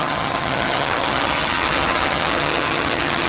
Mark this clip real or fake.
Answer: fake